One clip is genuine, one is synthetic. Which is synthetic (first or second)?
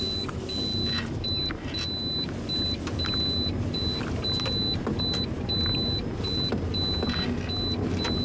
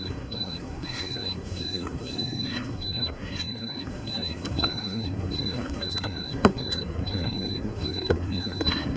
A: second